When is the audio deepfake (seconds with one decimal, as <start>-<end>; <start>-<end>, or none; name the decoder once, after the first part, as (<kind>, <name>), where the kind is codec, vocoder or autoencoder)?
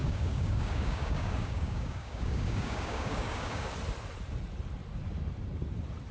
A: 0.0-3.7 (codec, DAC)